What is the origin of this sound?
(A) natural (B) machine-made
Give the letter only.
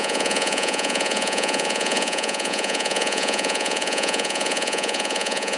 B